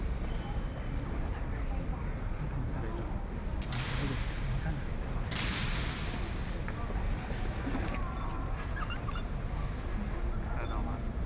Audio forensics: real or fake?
real